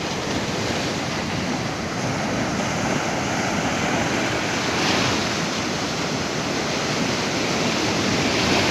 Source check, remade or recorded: recorded